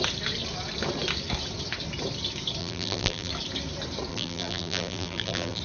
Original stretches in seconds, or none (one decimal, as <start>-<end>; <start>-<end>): 0.0-2.6; 3.3-4.1